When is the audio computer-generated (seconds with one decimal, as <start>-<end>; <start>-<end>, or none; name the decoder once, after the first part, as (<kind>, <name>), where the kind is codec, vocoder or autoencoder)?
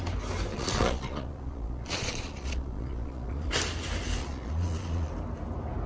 0.5-3.5 (vocoder, Vocos); 4.2-5.1